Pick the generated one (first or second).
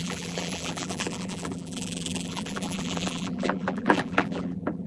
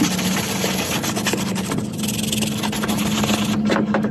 first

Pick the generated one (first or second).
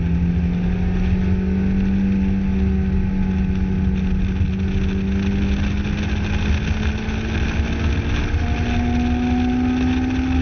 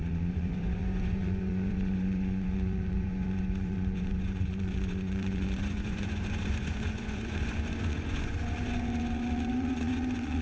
second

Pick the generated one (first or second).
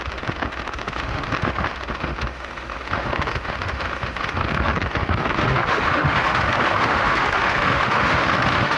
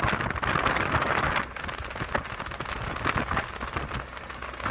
first